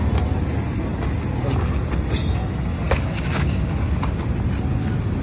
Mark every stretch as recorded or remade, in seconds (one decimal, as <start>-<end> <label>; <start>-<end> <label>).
0.0-2.7 recorded; 2.7-4.2 remade; 4.2-5.2 recorded